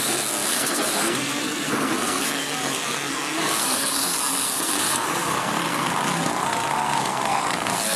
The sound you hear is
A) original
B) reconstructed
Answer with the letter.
B